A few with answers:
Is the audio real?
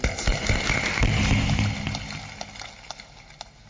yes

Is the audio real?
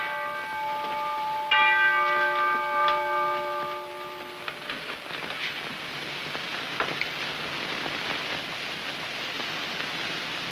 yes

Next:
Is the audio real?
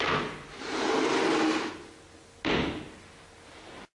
yes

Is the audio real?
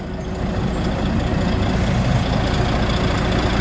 yes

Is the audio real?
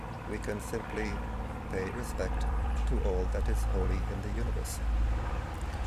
no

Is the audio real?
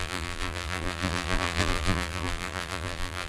no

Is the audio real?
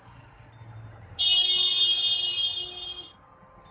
yes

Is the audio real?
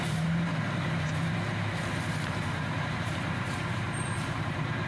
no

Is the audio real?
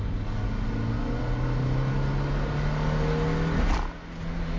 yes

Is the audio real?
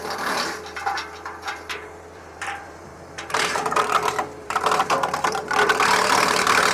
no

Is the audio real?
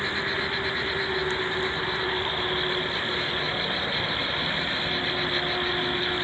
yes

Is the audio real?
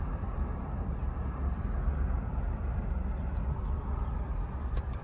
no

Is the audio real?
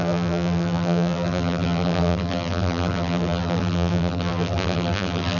no